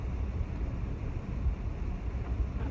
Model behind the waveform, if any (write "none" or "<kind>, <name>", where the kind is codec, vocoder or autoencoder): none